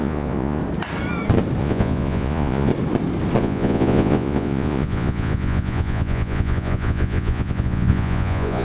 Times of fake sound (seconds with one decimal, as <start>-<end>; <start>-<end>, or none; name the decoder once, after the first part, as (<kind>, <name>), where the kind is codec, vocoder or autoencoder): 0.0-0.6 (vocoder, Vocos); 1.6-2.7; 3.4-8.6

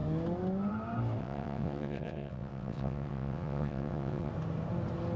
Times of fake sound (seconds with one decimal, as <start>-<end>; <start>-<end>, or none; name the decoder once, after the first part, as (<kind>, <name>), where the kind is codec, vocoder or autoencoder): 1.2-4.3 (vocoder, WaveNeXt)

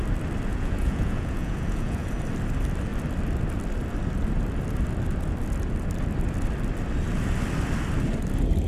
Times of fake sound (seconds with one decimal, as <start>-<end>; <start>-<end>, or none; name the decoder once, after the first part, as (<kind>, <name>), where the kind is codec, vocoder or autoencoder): 0.5-2.1 (vocoder, Vocos)

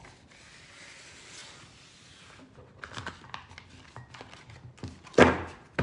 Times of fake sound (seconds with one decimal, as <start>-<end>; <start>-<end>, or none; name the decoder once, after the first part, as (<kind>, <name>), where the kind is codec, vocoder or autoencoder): none

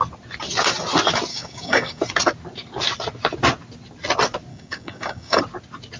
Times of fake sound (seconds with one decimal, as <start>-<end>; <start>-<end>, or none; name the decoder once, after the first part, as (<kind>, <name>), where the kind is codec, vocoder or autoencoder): 1.3-2.0 (codec, DAC); 4.5-5.4

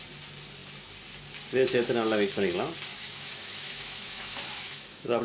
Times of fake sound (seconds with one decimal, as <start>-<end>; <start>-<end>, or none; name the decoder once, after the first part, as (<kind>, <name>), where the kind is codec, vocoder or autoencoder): 2.9-5.2 (autoencoder, DAC-VAE)